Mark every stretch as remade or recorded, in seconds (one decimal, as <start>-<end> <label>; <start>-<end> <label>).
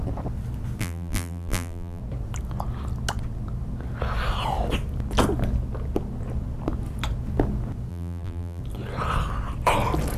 0.0-0.8 recorded; 0.8-2.0 remade; 2.0-7.9 recorded; 7.9-8.6 remade; 8.6-10.2 recorded